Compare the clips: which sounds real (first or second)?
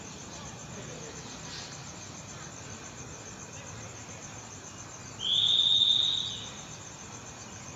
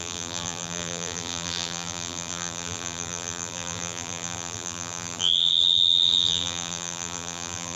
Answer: first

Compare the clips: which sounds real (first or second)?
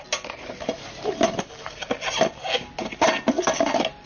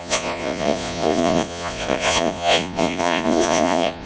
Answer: first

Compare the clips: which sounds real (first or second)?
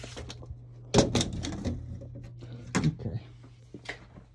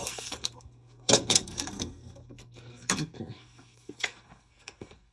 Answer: first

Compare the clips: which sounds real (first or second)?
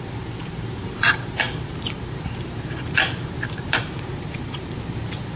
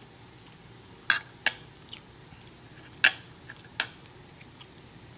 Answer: second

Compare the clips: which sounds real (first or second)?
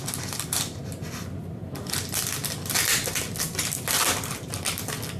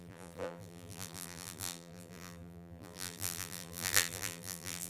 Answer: first